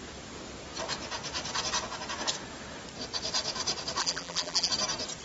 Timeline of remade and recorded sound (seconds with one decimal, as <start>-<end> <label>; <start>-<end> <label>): 0.0-4.0 recorded; 4.0-4.7 remade; 4.7-5.2 recorded